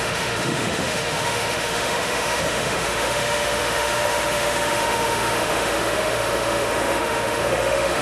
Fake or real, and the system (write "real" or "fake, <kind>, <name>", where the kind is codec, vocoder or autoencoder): fake, autoencoder, DAC-VAE